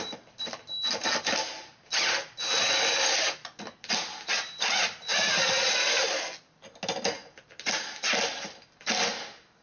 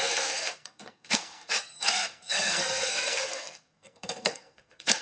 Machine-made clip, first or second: second